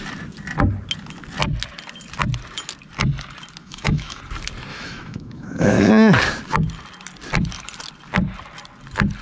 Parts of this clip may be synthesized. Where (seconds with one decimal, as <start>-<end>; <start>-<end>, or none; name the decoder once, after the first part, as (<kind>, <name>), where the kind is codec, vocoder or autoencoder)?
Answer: 3.6-4.2 (autoencoder, DAC-VAE); 4.7-5.9